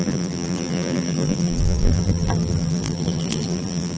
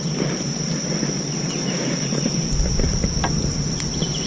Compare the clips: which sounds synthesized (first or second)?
first